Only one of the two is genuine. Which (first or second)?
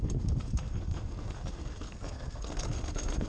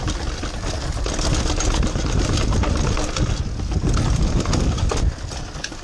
second